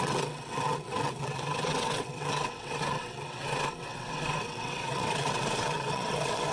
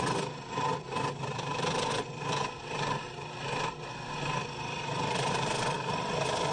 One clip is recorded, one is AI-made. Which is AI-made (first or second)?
first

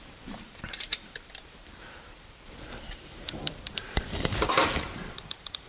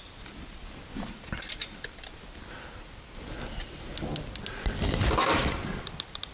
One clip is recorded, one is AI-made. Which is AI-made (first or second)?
first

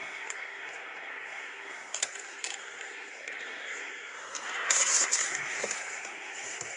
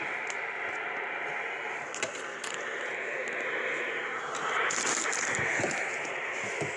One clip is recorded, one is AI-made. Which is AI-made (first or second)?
first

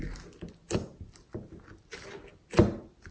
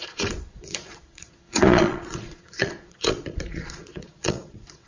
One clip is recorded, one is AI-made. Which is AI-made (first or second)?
second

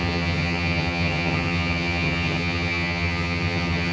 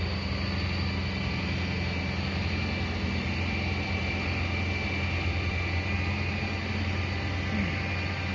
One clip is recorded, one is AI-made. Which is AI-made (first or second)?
first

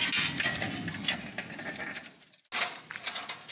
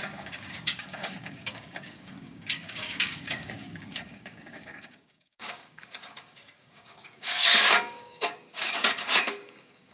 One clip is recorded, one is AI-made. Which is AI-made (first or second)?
second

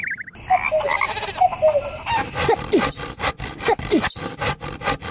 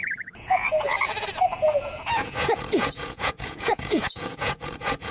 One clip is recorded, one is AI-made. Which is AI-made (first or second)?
second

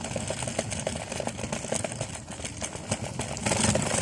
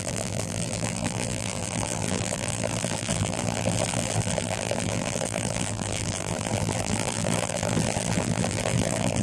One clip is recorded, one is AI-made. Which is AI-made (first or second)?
second